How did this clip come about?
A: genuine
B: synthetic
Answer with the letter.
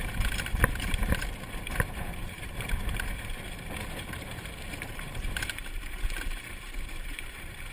B